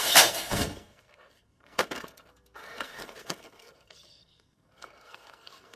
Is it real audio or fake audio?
fake